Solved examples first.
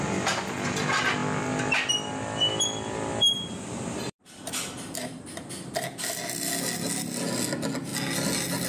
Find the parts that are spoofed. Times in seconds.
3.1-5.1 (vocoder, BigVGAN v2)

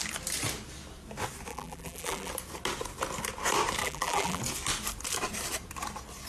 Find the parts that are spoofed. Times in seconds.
1.5-2.3 (vocoder, BigVGAN v2); 3.8-4.4

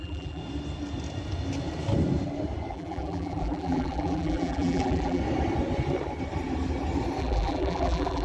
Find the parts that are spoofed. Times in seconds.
0.0-0.4 (vocoder, BigVGAN v2); 2.7-5.2; 7.2-8.2

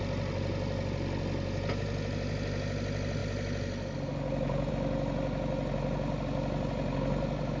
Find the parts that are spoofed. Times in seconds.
none

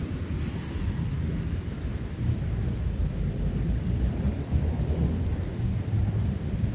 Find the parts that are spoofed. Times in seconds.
3.0-5.0 (vocoder, BigVGAN v2)